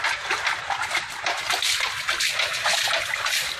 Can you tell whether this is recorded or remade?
recorded